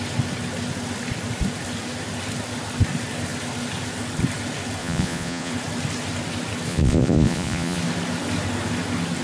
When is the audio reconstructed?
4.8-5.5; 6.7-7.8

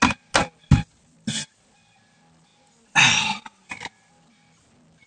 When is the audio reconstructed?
none

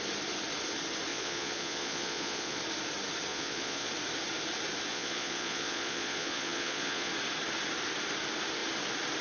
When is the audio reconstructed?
1.1-2.6; 3.3-3.9; 4.9-7.1